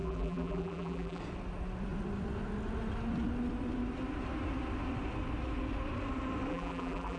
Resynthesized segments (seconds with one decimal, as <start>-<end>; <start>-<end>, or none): 0.0-1.2; 6.5-7.2